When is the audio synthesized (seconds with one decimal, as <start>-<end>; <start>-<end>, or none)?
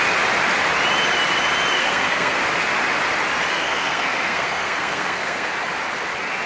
1.8-2.4; 3.5-5.5